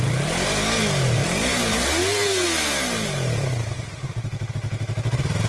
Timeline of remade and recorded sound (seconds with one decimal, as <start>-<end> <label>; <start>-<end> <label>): 0.0-5.5 recorded